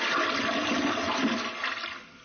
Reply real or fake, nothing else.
real